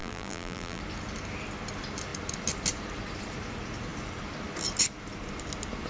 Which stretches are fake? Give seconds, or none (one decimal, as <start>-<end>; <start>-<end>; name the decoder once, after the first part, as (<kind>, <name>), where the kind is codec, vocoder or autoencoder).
0.0-0.8 (vocoder, BigVGAN v2)